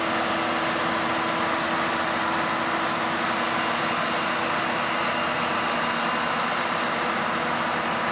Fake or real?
real